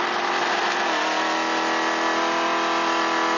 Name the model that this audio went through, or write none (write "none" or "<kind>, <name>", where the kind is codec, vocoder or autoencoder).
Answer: none